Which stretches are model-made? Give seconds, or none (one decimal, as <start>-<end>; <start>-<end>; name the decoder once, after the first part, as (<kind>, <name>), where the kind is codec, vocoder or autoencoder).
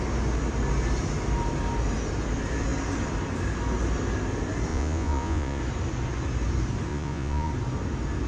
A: 4.7-5.6 (vocoder, Vocos); 6.9-7.5